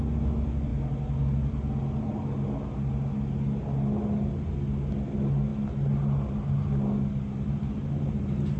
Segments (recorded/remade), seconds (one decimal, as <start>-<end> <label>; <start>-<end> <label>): 0.0-8.6 recorded